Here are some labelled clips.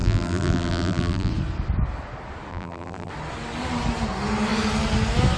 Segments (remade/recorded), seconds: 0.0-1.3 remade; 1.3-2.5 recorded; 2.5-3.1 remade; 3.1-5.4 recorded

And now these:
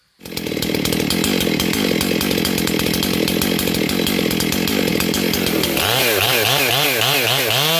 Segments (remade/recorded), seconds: 0.0-7.8 recorded

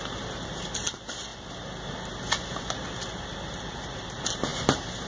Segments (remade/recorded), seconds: 0.0-1.3 remade; 1.3-2.6 recorded; 2.6-5.1 remade

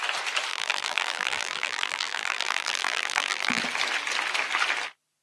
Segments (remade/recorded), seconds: 0.0-0.5 recorded; 0.5-3.6 remade; 3.6-5.2 recorded

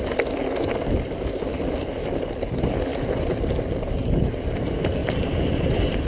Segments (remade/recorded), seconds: 0.0-5.0 recorded; 5.0-6.1 remade

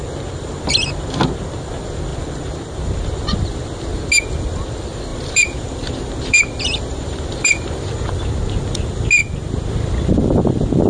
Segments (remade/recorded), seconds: 0.0-2.1 recorded; 2.1-3.2 remade; 3.2-5.1 recorded; 5.1-8.2 remade; 8.2-10.9 recorded

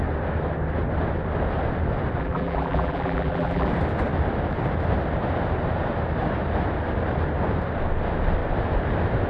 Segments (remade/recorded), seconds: 0.0-2.2 recorded; 2.2-3.7 remade; 3.7-9.3 recorded

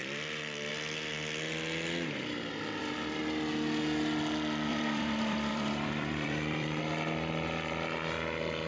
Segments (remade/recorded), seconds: 0.0-0.7 remade; 0.7-4.7 recorded; 4.7-6.8 remade; 6.8-8.7 recorded